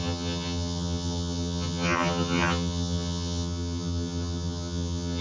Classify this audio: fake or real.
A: fake